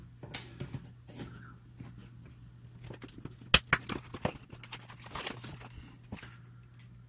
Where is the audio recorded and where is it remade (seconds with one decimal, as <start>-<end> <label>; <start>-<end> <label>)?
0.0-7.1 recorded